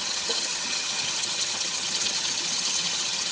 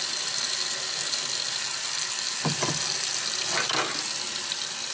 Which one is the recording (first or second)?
second